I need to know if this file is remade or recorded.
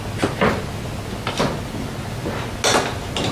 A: recorded